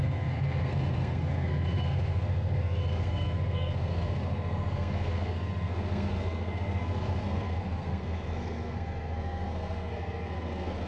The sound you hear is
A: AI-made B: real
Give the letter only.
A